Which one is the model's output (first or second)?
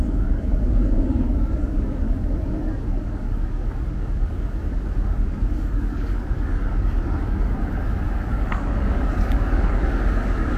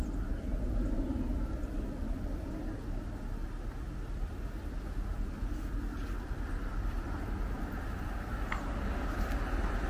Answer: first